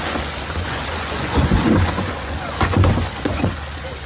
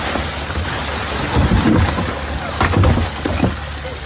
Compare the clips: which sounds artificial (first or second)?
first